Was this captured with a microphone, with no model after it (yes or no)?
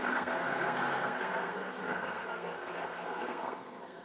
no